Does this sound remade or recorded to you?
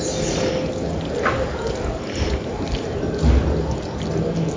recorded